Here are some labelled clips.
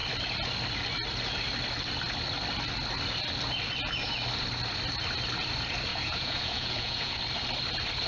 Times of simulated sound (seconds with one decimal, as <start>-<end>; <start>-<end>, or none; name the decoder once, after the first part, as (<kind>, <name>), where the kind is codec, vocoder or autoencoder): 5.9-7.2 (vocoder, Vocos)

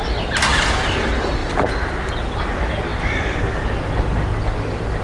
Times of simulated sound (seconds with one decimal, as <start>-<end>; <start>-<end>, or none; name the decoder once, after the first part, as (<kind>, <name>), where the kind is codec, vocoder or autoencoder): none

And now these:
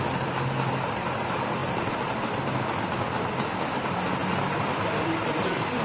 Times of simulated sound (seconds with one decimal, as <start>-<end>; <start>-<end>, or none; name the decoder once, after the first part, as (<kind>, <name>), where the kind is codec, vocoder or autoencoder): 1.6-2.5 (vocoder, BigVGAN v2); 4.2-5.8

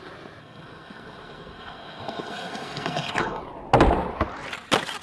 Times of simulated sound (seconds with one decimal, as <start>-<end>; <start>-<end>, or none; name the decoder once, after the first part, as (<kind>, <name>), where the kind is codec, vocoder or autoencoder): 0.4-3.4 (codec, SNAC)

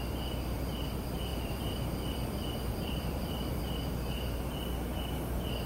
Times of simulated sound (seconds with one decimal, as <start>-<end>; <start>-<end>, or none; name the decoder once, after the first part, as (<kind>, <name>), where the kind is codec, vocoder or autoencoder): 1.3-3.6 (vocoder, BigVGAN v2)